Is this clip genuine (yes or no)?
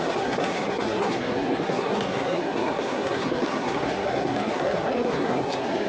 no